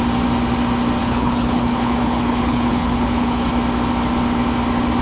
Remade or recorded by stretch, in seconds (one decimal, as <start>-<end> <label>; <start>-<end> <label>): 0.0-1.0 recorded; 1.0-3.5 remade; 3.5-5.0 recorded